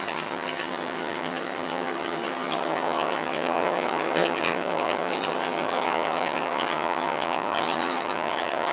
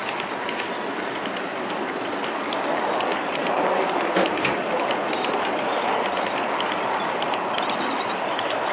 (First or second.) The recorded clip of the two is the second